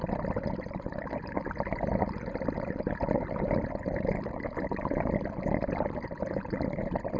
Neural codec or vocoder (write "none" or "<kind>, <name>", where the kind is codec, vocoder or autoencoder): none